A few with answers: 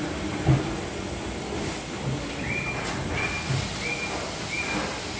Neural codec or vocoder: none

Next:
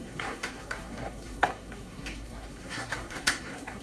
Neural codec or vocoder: codec, SNAC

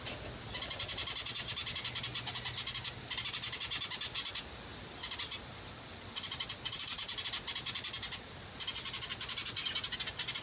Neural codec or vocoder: none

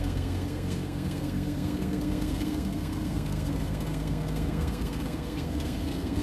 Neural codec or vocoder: codec, SNAC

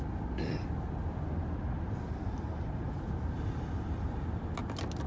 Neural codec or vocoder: none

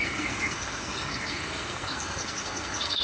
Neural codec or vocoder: codec, SNAC